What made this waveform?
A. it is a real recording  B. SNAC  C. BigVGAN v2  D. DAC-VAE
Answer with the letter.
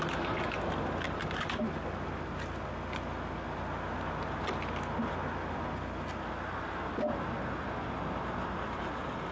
A